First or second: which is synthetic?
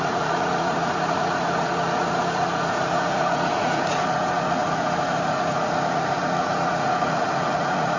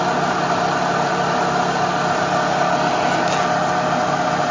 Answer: first